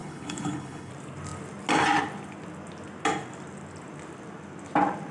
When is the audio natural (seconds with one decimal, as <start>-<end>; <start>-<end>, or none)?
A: 0.9-5.1